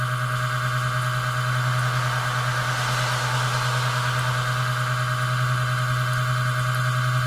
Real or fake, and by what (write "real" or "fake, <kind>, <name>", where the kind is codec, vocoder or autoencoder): real